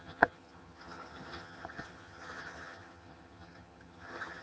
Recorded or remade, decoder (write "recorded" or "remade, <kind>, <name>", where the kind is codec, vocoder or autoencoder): remade, vocoder, HiFi-GAN